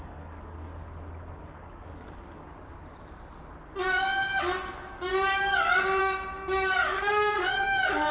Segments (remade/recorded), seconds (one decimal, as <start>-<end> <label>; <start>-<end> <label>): 0.0-0.7 remade; 0.7-1.3 recorded; 1.3-2.5 remade; 2.5-4.4 recorded; 4.4-5.1 remade; 5.1-6.0 recorded; 6.0-8.1 remade